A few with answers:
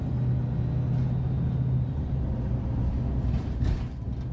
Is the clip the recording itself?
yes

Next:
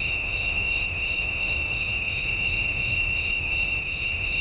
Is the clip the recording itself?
no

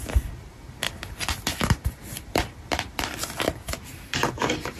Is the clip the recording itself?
yes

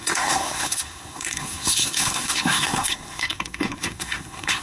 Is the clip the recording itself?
no